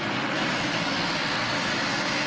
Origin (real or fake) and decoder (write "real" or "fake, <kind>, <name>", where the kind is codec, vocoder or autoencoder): real